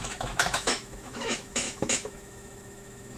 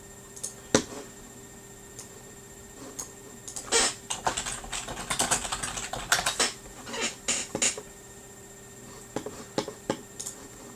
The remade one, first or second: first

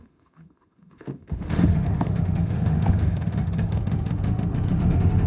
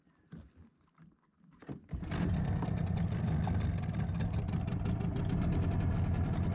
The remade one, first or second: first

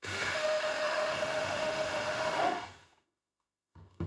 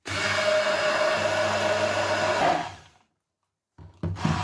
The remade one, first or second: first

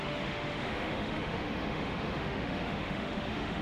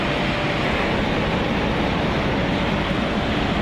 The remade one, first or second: first